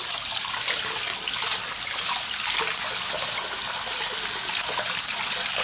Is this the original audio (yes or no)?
yes